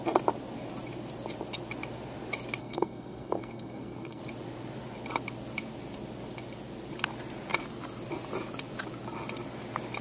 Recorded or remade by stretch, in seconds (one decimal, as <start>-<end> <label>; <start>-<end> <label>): 0.0-2.6 recorded; 2.6-4.2 remade; 4.2-10.0 recorded